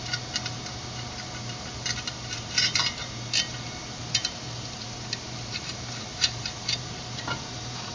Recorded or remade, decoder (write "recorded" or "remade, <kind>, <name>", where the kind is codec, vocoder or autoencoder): remade, vocoder, BigVGAN v2